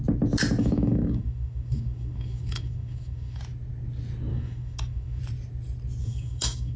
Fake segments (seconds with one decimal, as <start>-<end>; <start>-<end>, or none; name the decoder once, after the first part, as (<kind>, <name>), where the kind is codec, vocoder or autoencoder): 0.6-3.4 (autoencoder, DAC-VAE); 4.3-5.2; 6.0-6.8